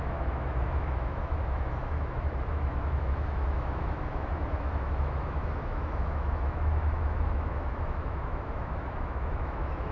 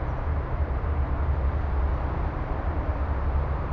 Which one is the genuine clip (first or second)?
second